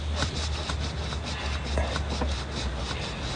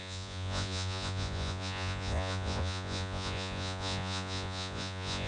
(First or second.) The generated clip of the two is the second